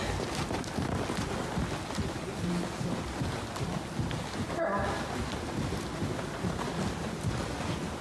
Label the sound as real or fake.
real